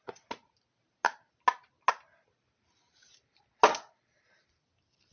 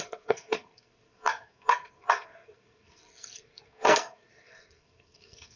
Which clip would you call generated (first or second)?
second